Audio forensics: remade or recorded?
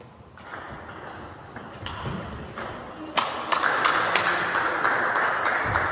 recorded